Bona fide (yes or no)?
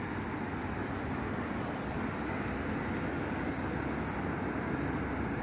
yes